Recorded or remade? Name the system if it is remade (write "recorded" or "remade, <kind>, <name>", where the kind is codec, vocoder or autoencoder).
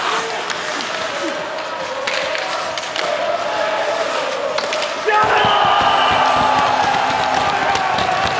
recorded